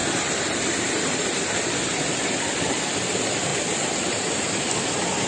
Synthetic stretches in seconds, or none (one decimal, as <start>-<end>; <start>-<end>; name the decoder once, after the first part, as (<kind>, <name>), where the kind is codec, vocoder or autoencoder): 0.0-5.3 (vocoder, BigVGAN v2)

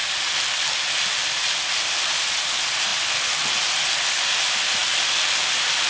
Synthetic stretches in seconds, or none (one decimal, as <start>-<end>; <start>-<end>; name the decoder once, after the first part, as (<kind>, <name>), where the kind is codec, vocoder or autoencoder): none

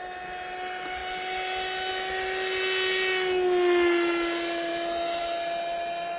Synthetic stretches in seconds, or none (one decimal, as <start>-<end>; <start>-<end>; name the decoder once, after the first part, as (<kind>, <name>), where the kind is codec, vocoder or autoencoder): none

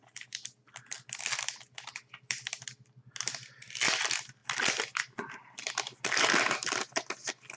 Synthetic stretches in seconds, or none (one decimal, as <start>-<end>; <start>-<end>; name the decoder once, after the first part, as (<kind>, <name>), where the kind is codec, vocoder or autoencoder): none

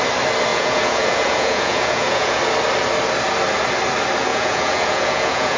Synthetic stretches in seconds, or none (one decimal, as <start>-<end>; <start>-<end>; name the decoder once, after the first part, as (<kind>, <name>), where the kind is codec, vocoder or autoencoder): 0.5-2.4 (vocoder, Vocos); 4.3-5.6

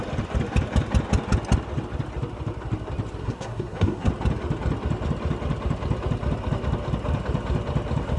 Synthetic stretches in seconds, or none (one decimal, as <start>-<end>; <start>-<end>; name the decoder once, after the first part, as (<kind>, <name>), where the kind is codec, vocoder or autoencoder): 3.2-4.1 (codec, SNAC)

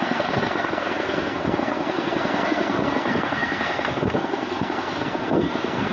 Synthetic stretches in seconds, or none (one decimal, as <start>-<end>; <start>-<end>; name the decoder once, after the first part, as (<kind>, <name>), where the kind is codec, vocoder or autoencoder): 0.0-5.9 (codec, SNAC)